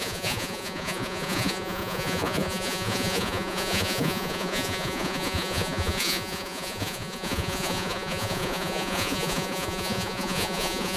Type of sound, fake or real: fake